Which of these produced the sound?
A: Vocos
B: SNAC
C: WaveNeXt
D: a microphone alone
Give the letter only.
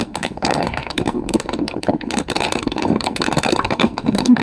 B